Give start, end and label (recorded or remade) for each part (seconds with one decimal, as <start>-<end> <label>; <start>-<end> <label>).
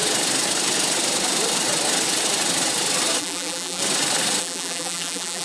0.0-3.2 recorded; 3.2-3.8 remade; 3.8-4.4 recorded; 4.4-5.4 remade